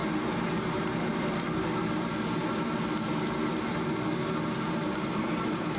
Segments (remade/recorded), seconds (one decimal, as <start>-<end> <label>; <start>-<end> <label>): 0.0-5.8 recorded